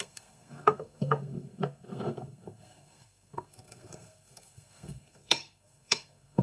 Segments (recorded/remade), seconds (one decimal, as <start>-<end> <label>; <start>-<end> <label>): 0.0-6.4 remade